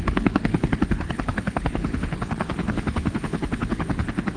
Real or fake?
fake